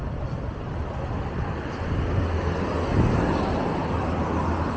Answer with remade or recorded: recorded